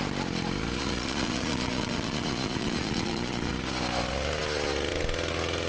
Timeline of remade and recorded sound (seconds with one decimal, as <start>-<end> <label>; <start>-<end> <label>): 0.0-0.8 recorded; 0.8-3.5 remade; 3.5-5.7 recorded